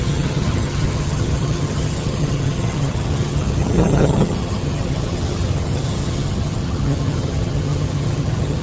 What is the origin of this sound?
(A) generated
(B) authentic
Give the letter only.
A